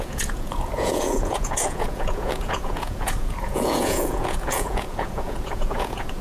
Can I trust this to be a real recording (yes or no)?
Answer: no